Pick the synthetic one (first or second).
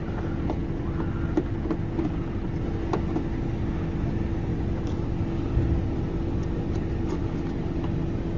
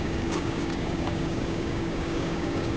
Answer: second